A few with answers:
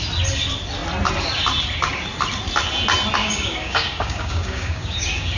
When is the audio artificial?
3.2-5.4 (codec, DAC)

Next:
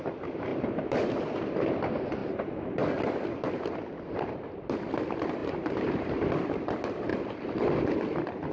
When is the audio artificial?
0.5-1.1 (vocoder, BigVGAN v2); 5.4-6.3